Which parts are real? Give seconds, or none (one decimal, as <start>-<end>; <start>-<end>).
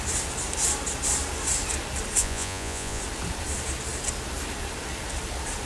0.0-2.2; 3.0-5.7